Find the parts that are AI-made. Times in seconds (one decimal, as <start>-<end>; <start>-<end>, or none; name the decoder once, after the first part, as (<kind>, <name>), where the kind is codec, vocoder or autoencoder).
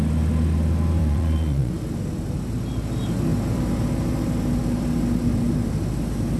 1.0-1.7 (vocoder, Vocos)